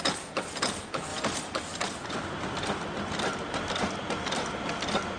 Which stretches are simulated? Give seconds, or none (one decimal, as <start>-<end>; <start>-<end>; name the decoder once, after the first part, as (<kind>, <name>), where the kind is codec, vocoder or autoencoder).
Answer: none